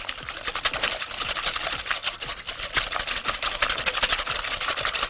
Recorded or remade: recorded